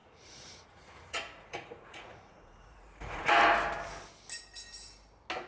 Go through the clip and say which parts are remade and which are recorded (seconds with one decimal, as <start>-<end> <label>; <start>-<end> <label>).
0.0-3.3 remade; 3.3-5.5 recorded